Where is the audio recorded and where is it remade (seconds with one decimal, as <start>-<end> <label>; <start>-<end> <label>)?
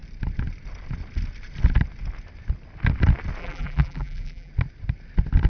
0.0-3.4 recorded; 3.4-4.5 remade; 4.5-5.5 recorded